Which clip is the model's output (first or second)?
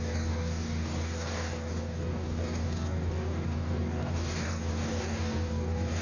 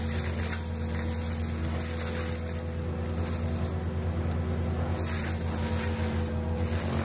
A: first